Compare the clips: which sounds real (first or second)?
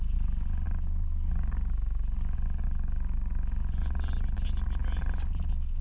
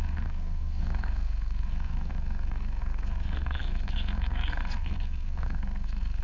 first